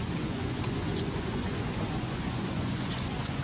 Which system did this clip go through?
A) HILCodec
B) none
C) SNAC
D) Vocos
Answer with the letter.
D